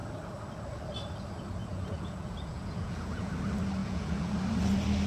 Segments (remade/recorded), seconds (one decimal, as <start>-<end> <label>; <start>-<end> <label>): 0.0-1.6 recorded; 1.6-3.3 remade; 3.3-3.8 recorded; 3.8-4.3 remade; 4.3-5.1 recorded